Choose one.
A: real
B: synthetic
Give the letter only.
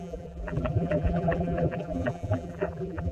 B